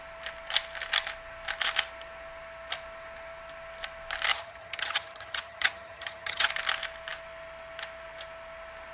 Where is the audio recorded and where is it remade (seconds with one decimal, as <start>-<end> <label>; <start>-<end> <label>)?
0.0-4.3 recorded; 4.3-6.5 remade; 6.5-8.9 recorded